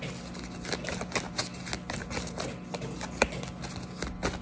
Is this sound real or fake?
real